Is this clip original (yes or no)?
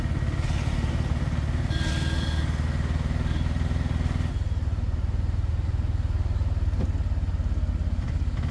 yes